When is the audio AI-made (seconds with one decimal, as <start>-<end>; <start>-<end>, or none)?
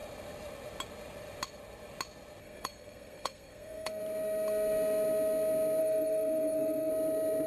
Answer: 2.4-4.0; 5.8-6.9